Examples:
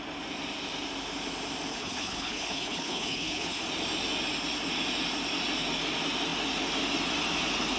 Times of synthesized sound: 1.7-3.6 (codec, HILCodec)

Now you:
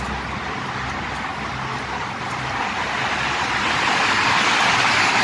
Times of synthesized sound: none

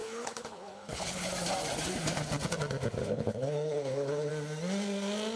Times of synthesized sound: 0.0-1.3 (codec, HILCodec); 3.0-4.3

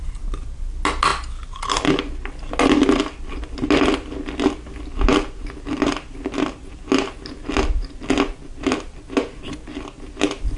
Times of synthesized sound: none

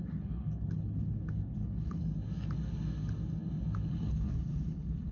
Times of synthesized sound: 0.0-2.0 (codec, HILCodec); 3.9-5.1